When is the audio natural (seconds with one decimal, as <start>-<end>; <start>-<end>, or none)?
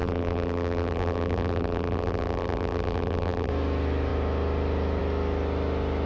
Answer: 3.5-6.1